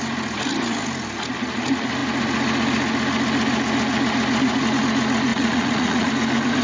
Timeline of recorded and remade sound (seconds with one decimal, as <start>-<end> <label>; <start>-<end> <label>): 0.0-5.3 recorded; 5.3-6.1 remade; 6.1-6.6 recorded